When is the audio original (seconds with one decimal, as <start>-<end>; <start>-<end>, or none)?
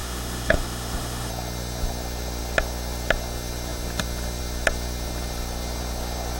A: 1.3-6.4